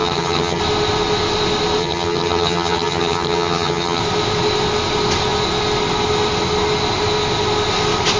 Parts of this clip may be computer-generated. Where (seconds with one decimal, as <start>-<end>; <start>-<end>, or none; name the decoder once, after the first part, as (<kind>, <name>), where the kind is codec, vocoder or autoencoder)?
0.0-0.6 (vocoder, HiFi-GAN); 1.8-4.0